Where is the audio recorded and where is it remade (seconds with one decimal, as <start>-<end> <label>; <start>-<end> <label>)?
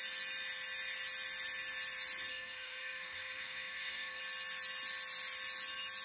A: 0.0-2.3 recorded; 2.3-4.2 remade; 4.2-6.0 recorded